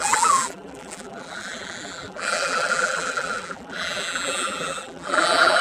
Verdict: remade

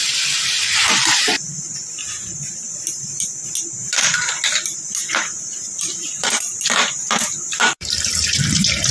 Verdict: remade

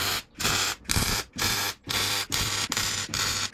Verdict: remade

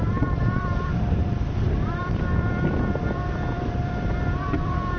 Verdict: remade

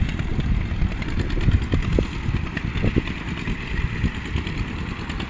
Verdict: recorded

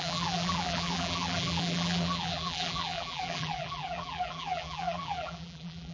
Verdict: remade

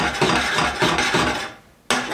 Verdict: recorded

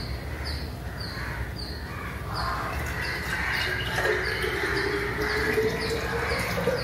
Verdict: recorded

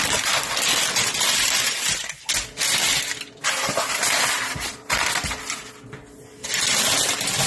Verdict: recorded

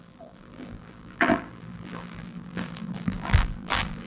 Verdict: remade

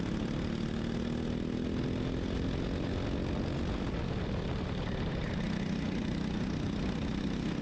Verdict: recorded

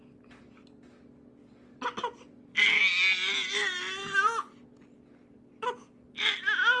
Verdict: recorded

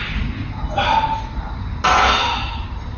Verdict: recorded